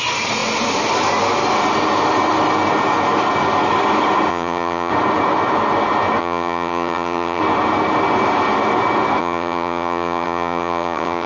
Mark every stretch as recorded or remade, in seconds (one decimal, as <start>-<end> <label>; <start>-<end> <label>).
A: 0.0-4.3 recorded; 4.3-4.9 remade; 4.9-6.2 recorded; 6.2-7.4 remade; 7.4-9.2 recorded; 9.2-11.3 remade